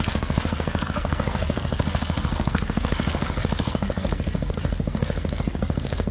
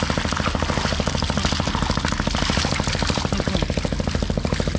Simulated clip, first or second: first